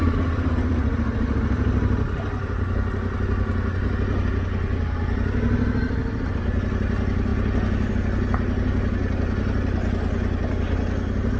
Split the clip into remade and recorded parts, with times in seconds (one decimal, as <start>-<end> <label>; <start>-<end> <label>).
0.0-11.4 recorded